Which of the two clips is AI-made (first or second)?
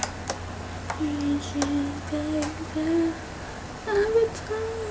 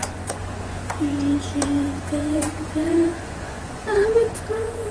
second